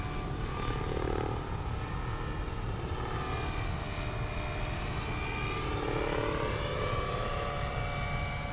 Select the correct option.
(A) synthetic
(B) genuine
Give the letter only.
B